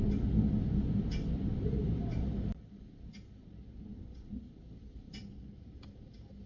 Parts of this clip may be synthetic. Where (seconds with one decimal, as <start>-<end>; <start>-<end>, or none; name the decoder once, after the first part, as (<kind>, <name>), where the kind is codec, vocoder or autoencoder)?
none